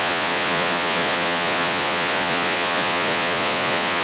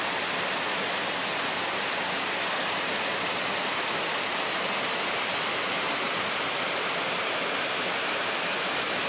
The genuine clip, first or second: second